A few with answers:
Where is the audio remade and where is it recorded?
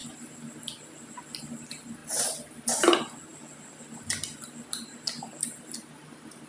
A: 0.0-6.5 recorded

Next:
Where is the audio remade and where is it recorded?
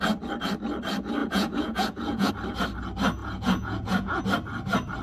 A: 0.0-1.2 recorded; 1.2-2.3 remade; 2.3-3.2 recorded; 3.2-4.2 remade; 4.2-5.0 recorded